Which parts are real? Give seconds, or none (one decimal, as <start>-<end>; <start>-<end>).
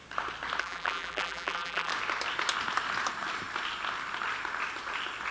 0.0-0.6; 1.9-5.3